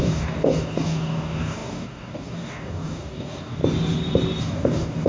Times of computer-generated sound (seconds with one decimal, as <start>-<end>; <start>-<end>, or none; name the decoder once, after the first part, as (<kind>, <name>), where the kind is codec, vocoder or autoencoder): 0.0-3.6 (codec, DAC); 4.4-5.1